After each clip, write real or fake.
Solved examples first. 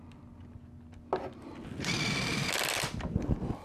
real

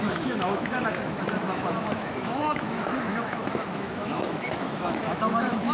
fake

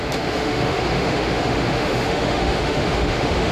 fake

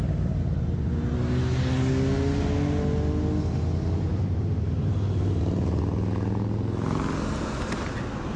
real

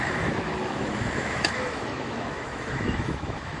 fake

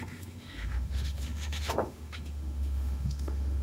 fake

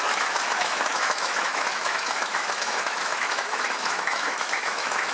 fake